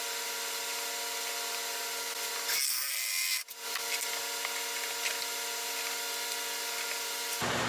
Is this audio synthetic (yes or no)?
no